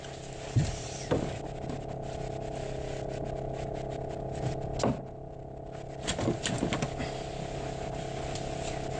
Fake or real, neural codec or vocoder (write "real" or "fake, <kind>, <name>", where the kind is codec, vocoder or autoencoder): real